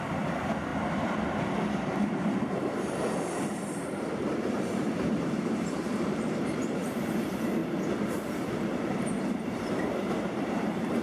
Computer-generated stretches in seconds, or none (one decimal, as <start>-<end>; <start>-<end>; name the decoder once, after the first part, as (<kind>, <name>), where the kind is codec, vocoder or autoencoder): 0.0-0.7 (vocoder, BigVGAN v2); 1.7-7.6; 9.2-11.0